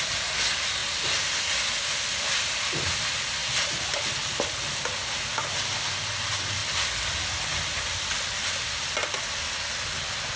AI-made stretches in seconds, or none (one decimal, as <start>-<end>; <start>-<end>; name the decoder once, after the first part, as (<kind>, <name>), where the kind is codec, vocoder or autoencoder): none